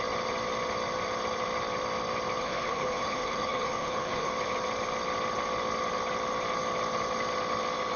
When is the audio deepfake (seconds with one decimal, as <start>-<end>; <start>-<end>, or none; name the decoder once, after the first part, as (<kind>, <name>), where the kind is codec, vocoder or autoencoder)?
2.4-4.3 (codec, HILCodec)